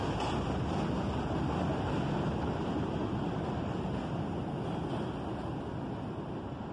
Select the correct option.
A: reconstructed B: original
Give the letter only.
B